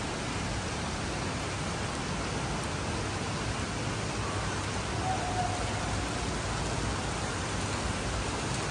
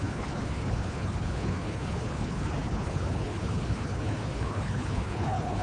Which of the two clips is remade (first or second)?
second